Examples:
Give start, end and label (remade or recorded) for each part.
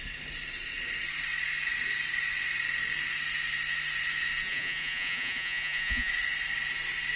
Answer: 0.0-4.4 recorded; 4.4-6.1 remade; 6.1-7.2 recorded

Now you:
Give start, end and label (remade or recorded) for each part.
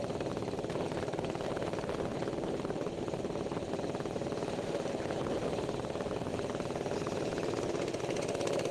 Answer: 0.0-8.7 recorded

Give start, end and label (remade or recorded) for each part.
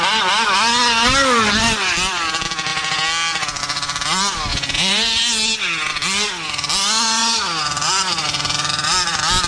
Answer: 0.0-4.5 recorded; 4.5-5.2 remade; 5.2-9.5 recorded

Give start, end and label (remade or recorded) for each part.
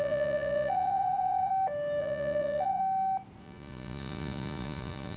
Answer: 0.0-1.5 remade; 1.5-2.0 recorded; 2.0-2.8 remade; 2.8-3.4 recorded; 3.4-5.2 remade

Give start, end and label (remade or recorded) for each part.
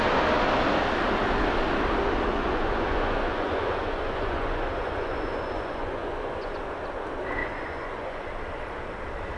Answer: 0.0-2.3 recorded; 2.3-6.6 remade; 6.6-7.4 recorded; 7.4-8.3 remade; 8.3-9.4 recorded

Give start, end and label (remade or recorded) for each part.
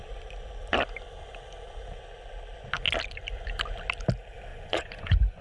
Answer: 0.0-4.5 recorded; 4.5-5.4 remade